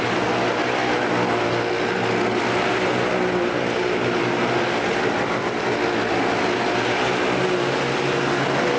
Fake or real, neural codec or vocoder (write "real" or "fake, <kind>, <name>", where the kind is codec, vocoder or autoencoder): real